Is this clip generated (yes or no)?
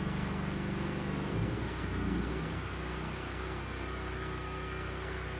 yes